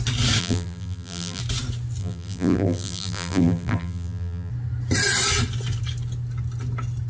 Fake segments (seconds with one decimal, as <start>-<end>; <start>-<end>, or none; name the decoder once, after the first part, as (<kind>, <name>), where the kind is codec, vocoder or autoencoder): 0.4-1.4 (vocoder, BigVGAN v2); 2.0-4.5